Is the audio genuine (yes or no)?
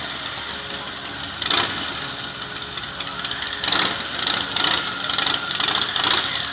yes